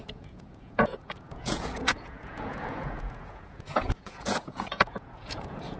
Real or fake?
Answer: fake